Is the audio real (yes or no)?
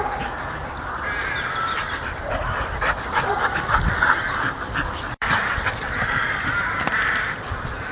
no